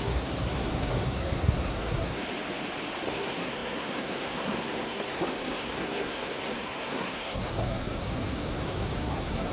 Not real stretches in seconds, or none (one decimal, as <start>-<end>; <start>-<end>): 0.0-2.2; 3.1-9.5